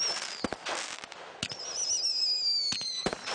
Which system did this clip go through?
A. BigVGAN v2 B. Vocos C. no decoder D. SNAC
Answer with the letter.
C